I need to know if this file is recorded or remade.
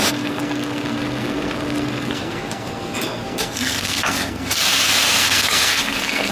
remade